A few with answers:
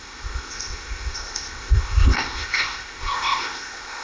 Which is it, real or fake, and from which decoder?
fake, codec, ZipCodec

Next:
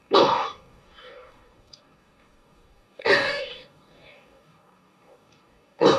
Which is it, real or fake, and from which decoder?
fake, codec, DAC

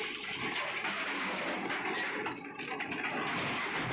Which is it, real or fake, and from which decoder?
real